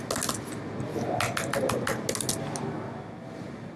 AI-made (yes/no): no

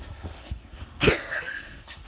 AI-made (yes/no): yes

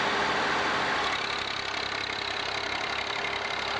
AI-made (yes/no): no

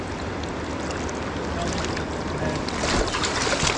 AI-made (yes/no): no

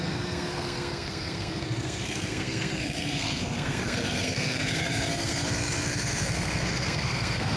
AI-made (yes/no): yes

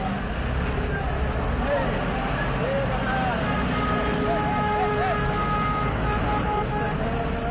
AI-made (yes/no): no